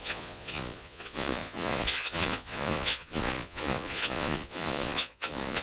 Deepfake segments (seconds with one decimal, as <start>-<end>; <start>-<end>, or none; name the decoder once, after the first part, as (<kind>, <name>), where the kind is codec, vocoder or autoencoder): 0.0-5.6 (vocoder, Vocos)